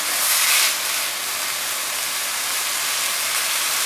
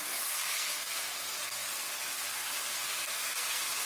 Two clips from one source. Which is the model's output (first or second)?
second